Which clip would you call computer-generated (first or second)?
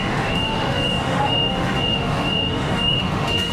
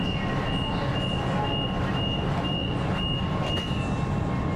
first